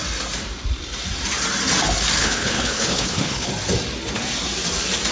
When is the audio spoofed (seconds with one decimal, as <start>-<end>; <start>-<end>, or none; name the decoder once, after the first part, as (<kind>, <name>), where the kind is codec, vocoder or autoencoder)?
2.2-3.5 (codec, HILCodec)

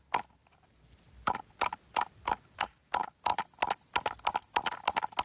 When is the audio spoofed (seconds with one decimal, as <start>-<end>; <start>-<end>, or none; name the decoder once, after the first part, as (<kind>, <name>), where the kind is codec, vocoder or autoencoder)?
none

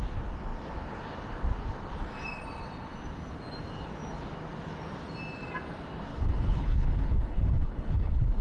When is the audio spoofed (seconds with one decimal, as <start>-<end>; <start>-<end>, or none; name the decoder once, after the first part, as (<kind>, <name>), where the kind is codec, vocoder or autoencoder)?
6.1-8.4 (codec, HILCodec)

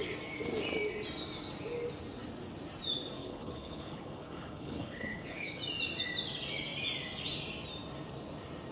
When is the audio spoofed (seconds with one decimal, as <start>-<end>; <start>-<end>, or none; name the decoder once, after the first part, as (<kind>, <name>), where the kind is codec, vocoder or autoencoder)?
3.2-5.6 (codec, HILCodec)

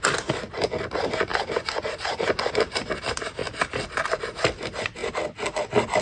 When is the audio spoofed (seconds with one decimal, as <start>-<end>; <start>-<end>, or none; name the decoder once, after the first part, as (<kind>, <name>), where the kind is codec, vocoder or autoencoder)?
none

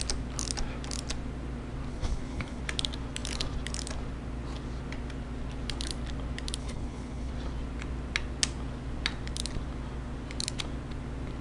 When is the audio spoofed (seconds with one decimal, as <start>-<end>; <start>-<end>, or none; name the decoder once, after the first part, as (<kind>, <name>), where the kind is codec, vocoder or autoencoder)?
1.9-2.6 (codec, HILCodec); 6.6-7.3

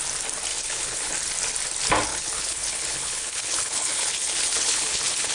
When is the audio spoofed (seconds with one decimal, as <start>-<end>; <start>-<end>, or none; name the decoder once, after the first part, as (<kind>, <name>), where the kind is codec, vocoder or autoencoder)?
0.5-1.1 (codec, HILCodec); 2.1-5.3